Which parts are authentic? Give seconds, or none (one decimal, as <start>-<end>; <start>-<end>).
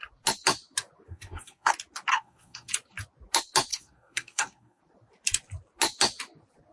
0.0-1.1; 1.7-2.1; 2.7-3.7; 4.8-6.7